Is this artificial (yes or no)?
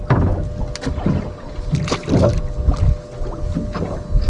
no